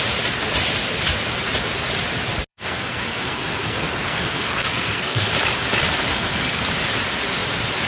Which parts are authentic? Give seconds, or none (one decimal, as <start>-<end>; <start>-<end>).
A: 0.0-2.5; 5.3-6.1; 6.6-7.9